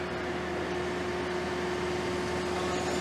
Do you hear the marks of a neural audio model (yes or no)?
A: no